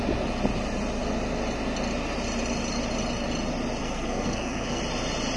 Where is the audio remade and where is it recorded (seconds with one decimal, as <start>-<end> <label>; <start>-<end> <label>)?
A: 0.0-3.8 recorded; 3.8-4.8 remade; 4.8-5.4 recorded